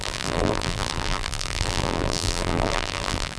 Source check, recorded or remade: remade